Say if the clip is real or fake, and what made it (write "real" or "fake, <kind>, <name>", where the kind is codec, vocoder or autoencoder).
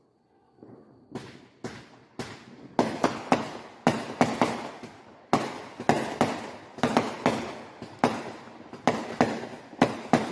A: real